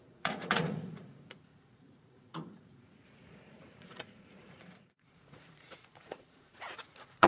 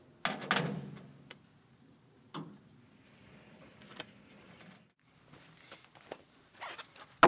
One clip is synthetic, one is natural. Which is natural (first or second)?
second